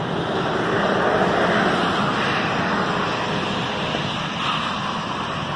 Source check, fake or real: real